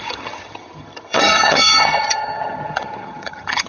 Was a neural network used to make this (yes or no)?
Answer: yes